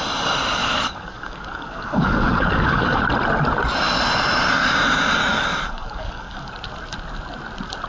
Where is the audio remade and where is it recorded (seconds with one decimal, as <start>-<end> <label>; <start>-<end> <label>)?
0.0-0.6 recorded; 0.6-3.0 remade; 3.0-5.2 recorded; 5.2-6.5 remade; 6.5-7.9 recorded